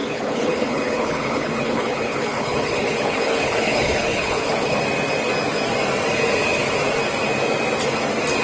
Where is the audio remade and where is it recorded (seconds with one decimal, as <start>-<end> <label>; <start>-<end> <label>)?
0.0-4.8 remade; 4.8-8.4 recorded